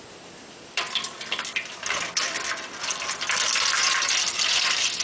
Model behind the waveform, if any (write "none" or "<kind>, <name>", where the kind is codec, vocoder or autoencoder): vocoder, BigVGAN v2